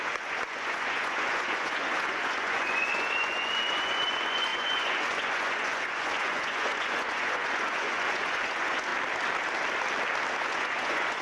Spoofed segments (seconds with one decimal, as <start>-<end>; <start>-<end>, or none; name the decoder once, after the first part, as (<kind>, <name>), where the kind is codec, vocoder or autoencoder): 0.0-8.9 (vocoder, Vocos); 10.4-11.2